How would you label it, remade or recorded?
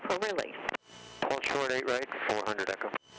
recorded